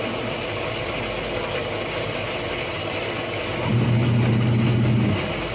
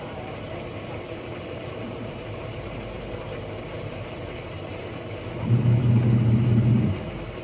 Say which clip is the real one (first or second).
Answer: first